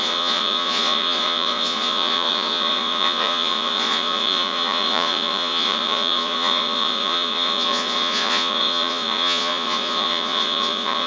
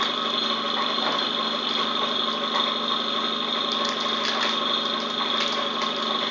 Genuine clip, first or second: second